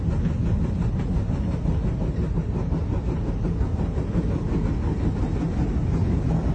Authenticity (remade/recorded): recorded